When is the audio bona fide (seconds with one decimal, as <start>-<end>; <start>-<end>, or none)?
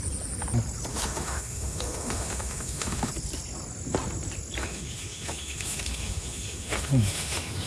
0.0-0.9; 3.1-4.6